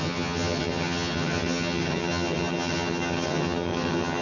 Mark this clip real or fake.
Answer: fake